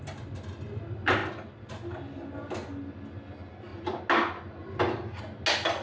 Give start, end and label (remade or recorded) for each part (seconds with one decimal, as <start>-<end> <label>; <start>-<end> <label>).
0.0-5.8 recorded